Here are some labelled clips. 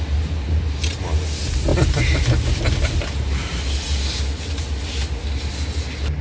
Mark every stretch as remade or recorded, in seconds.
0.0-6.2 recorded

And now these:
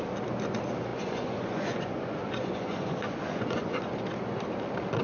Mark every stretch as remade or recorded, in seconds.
0.0-0.9 recorded; 0.9-3.9 remade; 3.9-5.0 recorded

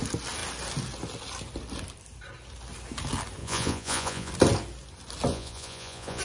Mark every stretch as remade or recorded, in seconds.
0.0-3.4 recorded; 3.4-4.3 remade; 4.3-5.3 recorded; 5.3-6.2 remade

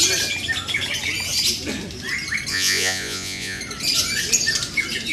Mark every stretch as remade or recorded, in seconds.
0.0-2.5 recorded; 2.5-3.6 remade; 3.6-5.1 recorded